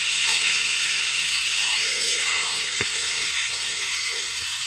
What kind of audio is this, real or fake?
fake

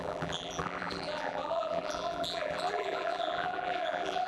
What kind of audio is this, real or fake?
fake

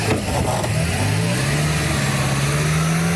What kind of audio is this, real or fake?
real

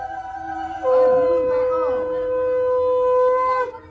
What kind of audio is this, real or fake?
real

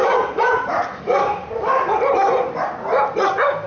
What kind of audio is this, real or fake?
fake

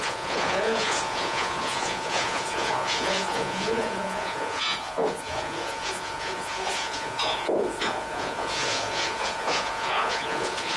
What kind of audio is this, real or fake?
fake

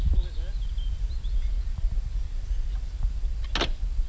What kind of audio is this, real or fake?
real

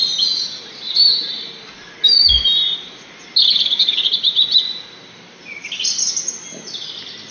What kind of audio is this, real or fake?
real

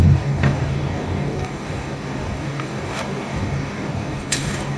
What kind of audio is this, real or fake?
fake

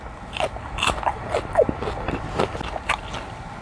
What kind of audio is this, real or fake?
real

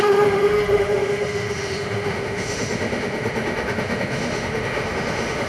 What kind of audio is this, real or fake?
fake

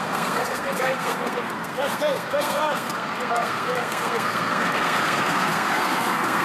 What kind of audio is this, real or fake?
fake